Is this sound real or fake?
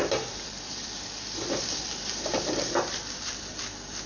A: fake